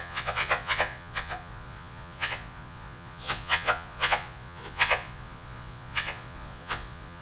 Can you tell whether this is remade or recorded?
remade